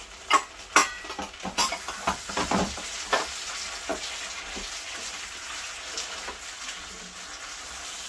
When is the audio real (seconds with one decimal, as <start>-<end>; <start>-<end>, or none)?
0.0-0.8; 2.3-8.1